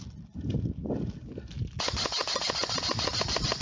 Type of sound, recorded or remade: recorded